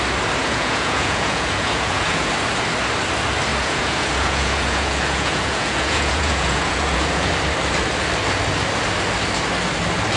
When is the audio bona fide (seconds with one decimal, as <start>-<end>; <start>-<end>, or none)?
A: 0.0-0.4; 2.3-3.5; 7.3-10.2